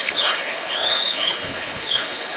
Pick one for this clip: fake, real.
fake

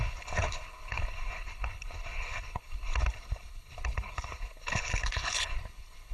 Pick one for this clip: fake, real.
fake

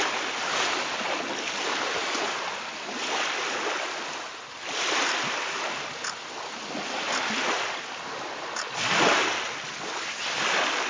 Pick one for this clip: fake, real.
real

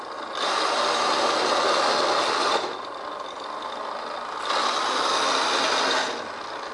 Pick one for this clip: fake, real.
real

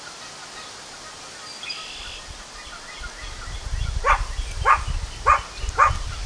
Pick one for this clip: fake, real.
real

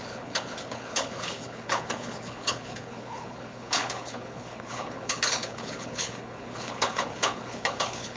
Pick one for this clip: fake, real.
fake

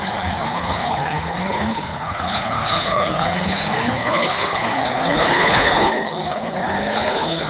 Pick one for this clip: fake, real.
fake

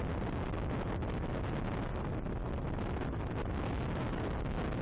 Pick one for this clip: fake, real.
real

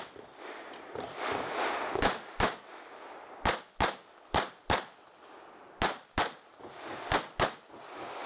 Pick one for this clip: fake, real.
real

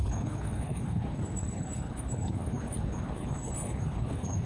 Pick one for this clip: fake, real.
fake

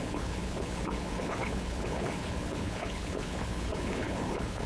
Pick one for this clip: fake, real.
fake